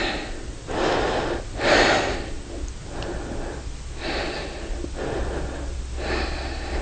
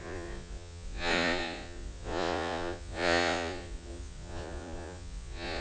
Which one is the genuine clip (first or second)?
first